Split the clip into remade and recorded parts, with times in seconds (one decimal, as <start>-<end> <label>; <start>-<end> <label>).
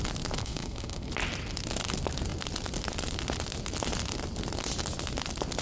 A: 0.0-0.4 recorded; 0.4-1.1 remade; 1.1-5.6 recorded